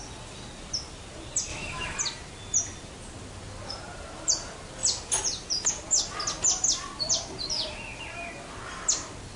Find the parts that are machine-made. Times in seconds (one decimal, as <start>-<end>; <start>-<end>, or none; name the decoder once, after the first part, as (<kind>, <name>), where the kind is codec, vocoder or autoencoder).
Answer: 1.5-2.0 (autoencoder, DAC-VAE)